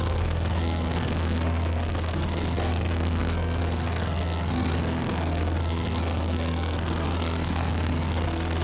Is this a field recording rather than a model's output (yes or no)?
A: no